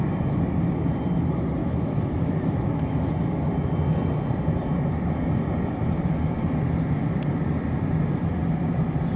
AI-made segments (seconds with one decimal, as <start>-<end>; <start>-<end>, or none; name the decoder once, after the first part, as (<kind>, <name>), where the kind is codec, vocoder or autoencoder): 1.6-3.1 (autoencoder, DAC-VAE)